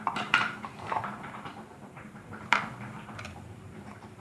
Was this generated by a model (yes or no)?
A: yes